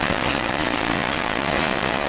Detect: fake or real fake